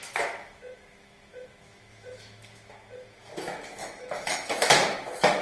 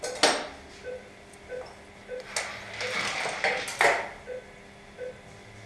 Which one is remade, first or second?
first